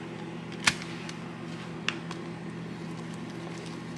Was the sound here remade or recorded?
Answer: recorded